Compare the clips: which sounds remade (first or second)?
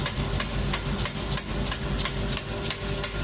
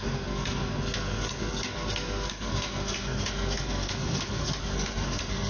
second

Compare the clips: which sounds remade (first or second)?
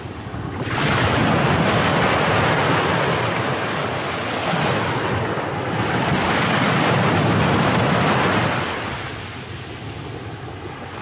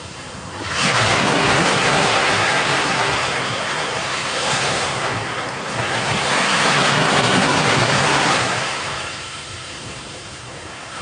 second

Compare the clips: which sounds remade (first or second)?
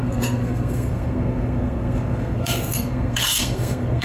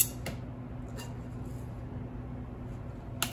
first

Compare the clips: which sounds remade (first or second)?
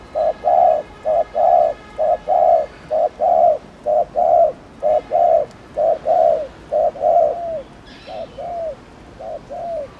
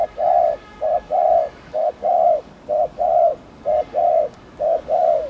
second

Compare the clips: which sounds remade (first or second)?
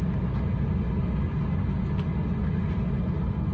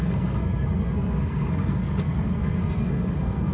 second